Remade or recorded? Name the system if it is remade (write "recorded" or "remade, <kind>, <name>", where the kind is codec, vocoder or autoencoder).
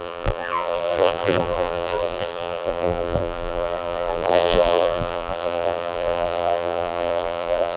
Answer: remade, vocoder, BigVGAN v2